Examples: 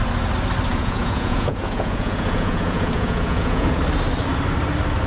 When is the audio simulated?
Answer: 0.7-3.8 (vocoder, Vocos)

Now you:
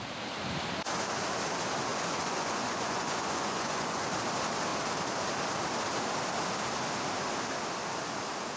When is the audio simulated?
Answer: 1.9-4.1 (vocoder, Vocos)

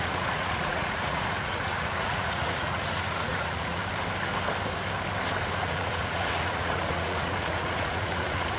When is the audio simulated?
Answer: 0.0-3.8 (vocoder, Vocos); 5.4-8.6

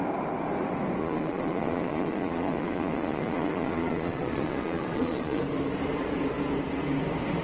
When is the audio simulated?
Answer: 1.0-5.4 (vocoder, Vocos)

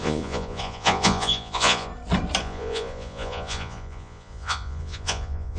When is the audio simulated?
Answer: 0.0-1.9 (vocoder, Vocos); 2.4-5.6

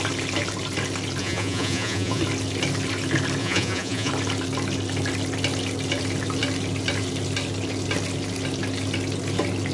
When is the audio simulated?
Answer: 1.2-2.2 (vocoder, Vocos); 3.4-4.1

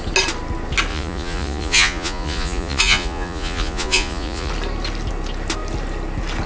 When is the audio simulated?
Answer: 0.9-4.5 (vocoder, Vocos)